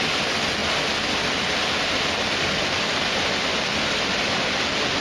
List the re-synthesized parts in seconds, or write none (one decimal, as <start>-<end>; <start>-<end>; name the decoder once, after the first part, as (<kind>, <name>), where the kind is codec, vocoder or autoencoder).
none